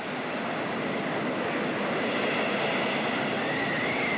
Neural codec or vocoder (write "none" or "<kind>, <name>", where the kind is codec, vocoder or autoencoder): none